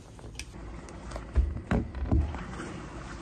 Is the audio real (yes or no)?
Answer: yes